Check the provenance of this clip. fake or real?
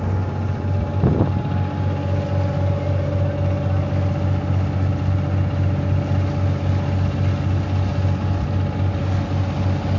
real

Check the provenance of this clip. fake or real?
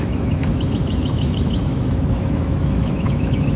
fake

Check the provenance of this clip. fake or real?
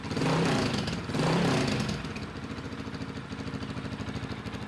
real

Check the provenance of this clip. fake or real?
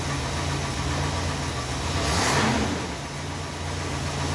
real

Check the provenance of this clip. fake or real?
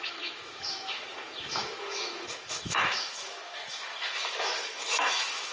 fake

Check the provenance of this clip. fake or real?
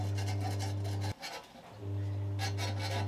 real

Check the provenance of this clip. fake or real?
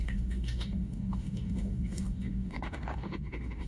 fake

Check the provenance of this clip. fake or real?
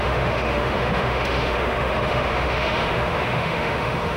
fake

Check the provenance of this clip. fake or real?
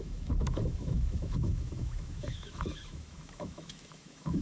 fake